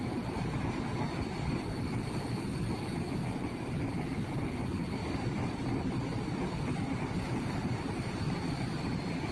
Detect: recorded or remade recorded